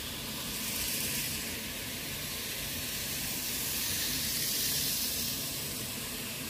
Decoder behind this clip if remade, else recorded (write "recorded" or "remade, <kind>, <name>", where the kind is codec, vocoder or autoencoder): remade, vocoder, BigVGAN v2